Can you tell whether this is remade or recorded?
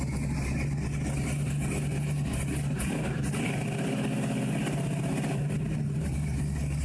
recorded